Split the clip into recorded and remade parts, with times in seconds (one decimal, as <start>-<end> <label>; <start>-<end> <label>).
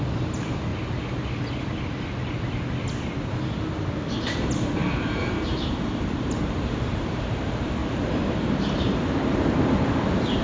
0.0-0.7 remade; 0.7-4.2 recorded; 4.2-7.8 remade; 7.8-8.4 recorded; 8.4-10.4 remade